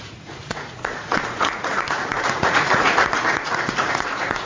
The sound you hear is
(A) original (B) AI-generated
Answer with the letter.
B